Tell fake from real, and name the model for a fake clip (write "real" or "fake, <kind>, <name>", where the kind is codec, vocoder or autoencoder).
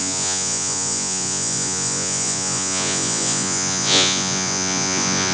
fake, vocoder, Vocos